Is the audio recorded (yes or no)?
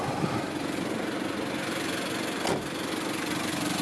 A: yes